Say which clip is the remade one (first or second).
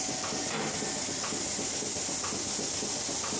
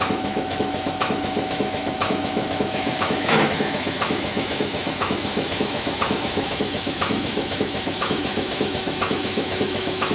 second